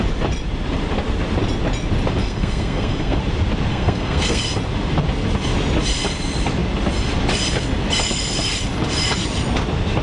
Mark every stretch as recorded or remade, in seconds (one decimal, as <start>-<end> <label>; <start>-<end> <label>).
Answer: 0.0-2.2 recorded; 2.2-3.2 remade; 3.2-3.7 recorded; 3.7-4.4 remade; 4.4-10.0 recorded